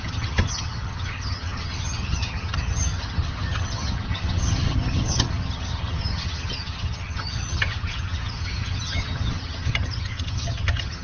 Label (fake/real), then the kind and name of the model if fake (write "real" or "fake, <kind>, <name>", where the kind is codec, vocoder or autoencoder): fake, vocoder, HiFi-GAN